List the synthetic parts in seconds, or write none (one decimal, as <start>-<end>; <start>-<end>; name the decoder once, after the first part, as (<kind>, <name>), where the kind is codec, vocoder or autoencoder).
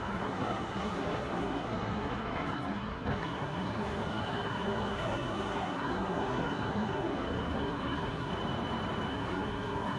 0.0-8.3 (codec, SNAC); 9.1-10.0